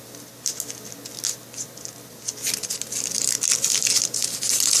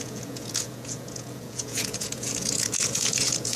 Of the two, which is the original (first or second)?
first